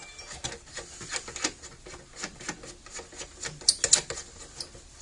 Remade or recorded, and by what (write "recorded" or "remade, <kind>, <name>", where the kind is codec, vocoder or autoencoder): recorded